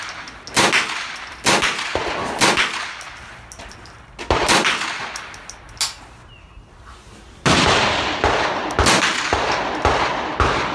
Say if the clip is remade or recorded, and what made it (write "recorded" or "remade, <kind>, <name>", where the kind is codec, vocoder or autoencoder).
recorded